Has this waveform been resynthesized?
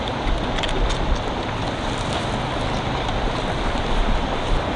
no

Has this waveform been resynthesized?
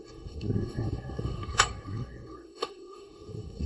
yes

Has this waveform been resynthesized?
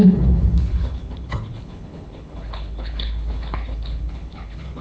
yes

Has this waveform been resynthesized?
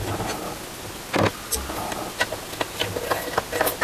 no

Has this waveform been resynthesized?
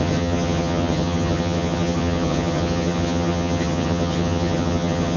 yes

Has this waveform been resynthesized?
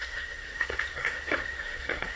yes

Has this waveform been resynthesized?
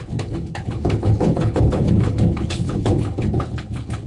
yes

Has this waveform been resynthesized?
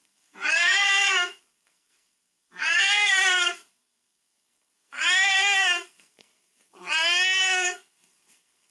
yes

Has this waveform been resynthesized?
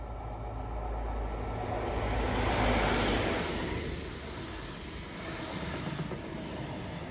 no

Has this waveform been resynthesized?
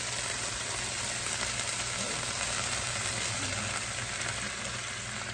no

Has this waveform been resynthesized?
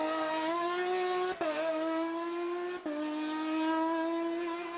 no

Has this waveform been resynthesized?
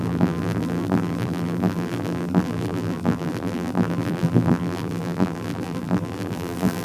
yes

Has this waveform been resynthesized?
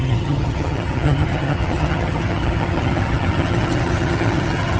yes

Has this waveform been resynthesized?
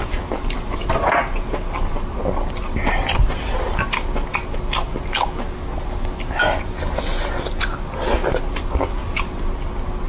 no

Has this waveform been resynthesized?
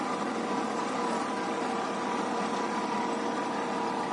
no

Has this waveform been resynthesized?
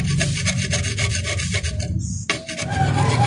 no